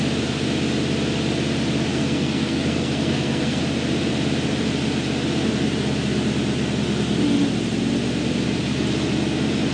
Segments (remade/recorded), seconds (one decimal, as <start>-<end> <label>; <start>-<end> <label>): 0.0-1.9 recorded; 1.9-3.6 remade; 3.6-9.7 recorded